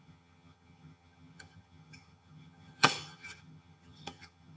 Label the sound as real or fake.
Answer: fake